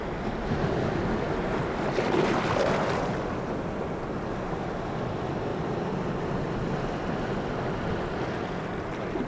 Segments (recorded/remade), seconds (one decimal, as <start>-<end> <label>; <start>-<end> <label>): 0.0-9.3 recorded